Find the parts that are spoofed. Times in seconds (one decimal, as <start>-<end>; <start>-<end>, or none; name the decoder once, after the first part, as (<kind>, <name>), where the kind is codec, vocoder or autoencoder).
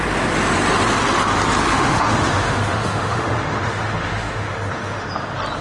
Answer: 1.7-5.1 (autoencoder, DAC-VAE)